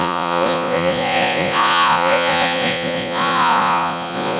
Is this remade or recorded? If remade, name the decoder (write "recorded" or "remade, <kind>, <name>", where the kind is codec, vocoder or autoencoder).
remade, vocoder, Vocos